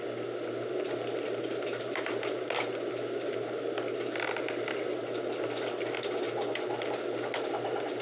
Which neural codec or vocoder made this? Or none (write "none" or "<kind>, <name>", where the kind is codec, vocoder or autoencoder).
none